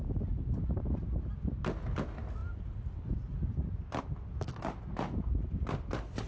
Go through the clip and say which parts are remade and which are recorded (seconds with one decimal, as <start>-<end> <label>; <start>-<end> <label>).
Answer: 0.0-2.4 recorded; 2.4-4.0 remade; 4.0-6.3 recorded